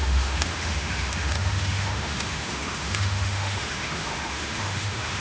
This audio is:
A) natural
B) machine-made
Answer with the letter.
B